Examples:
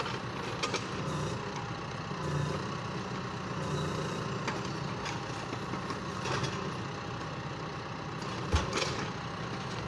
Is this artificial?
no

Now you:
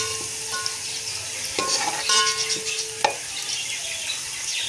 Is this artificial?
no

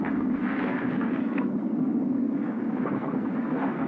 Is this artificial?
yes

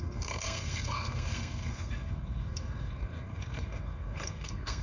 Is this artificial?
yes